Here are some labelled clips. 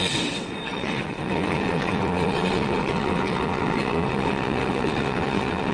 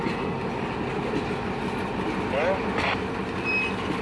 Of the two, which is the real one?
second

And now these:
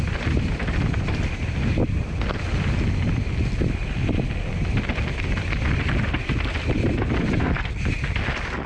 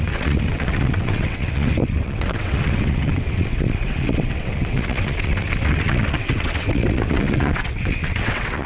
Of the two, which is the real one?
first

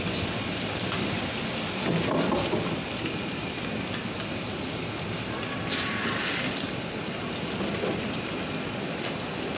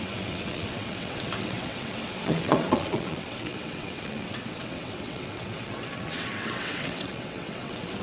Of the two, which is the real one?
first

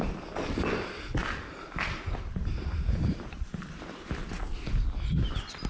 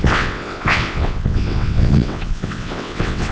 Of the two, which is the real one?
first